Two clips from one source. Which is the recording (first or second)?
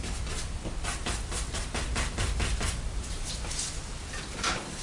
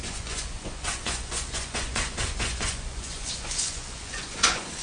first